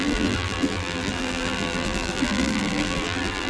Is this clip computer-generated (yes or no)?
yes